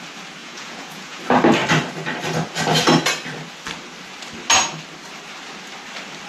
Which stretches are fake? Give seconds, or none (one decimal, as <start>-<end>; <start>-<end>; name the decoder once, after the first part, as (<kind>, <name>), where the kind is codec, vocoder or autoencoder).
0.4-1.2 (vocoder, Vocos)